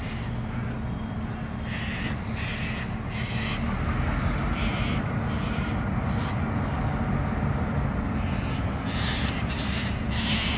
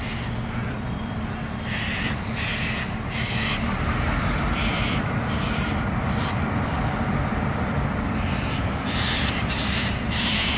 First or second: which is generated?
second